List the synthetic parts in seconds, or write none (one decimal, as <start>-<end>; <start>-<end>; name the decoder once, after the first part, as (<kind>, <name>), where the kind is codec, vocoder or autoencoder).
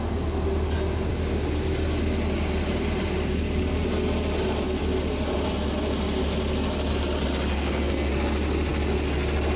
7.5-8.1 (codec, SNAC)